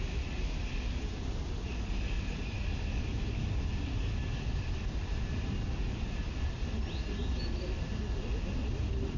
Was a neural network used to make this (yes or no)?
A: no